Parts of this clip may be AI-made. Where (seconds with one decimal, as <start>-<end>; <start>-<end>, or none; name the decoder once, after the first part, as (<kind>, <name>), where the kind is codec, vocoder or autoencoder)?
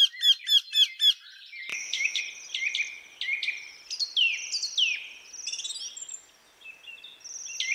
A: 1.7-2.2 (autoencoder, DAC-VAE)